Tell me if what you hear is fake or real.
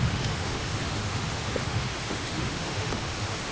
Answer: fake